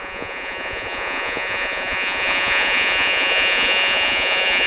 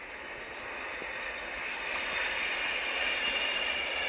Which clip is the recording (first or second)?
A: second